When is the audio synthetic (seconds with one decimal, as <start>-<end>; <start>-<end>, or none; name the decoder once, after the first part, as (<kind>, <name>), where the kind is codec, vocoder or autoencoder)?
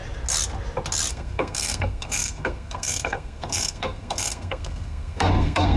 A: 1.1-5.8 (codec, SNAC)